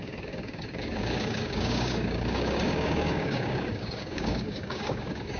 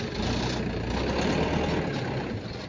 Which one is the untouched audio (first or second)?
second